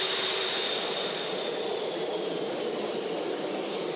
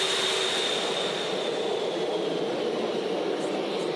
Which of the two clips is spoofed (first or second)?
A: first